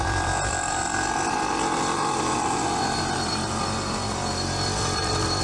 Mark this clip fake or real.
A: real